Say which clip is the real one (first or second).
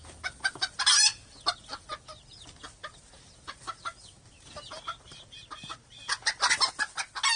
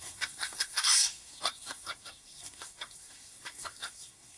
first